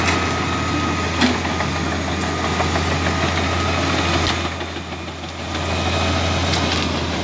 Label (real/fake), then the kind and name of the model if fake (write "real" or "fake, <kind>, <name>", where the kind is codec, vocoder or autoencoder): real